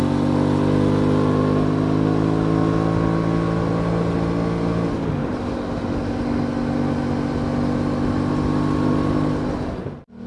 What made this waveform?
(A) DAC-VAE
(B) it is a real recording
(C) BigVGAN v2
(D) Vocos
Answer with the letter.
B